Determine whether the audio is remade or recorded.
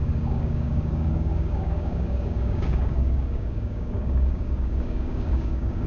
remade